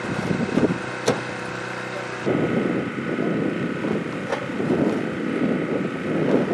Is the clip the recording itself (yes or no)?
yes